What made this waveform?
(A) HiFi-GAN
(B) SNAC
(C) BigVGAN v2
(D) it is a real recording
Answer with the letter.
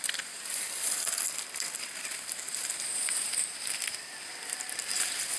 C